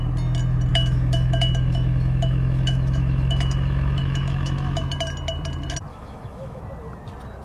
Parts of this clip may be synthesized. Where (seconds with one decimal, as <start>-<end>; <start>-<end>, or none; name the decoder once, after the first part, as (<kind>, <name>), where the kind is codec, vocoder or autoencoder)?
0.7-4.8 (autoencoder, DAC-VAE); 5.9-6.6